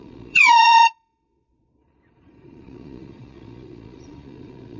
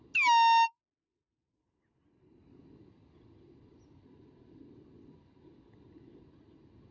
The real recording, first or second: second